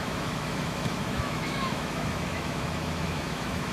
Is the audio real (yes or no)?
no